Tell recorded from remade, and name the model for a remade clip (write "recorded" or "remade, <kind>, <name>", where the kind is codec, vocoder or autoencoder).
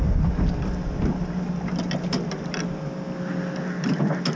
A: recorded